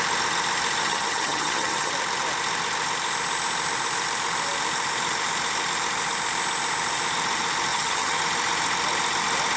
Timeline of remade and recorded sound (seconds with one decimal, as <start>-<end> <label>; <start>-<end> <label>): 0.0-0.8 recorded; 0.8-1.9 remade; 1.9-7.7 recorded; 7.7-8.2 remade; 8.2-9.6 recorded